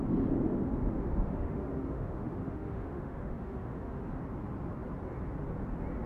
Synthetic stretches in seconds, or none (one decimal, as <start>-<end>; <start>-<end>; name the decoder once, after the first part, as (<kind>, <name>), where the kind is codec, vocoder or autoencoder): 0.8-4.1 (autoencoder, DAC-VAE)